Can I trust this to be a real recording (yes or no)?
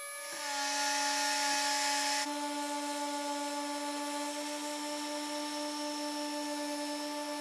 yes